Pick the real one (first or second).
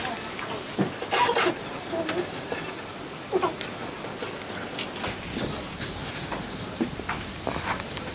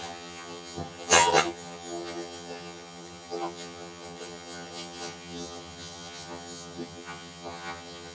first